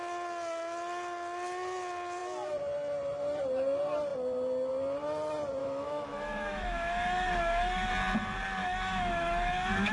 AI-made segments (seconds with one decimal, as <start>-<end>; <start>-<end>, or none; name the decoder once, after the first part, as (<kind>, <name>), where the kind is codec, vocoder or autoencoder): 5.6-7.9 (autoencoder, DAC-VAE); 8.6-9.9